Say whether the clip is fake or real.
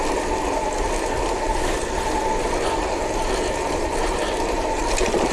real